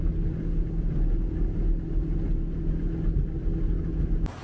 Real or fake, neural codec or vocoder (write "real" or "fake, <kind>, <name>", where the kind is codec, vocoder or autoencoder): real